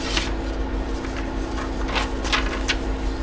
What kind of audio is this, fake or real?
real